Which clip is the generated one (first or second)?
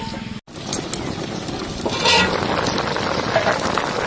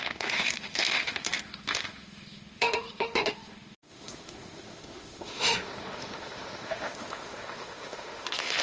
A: second